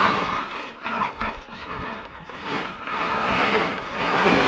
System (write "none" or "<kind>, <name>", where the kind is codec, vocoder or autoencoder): codec, SNAC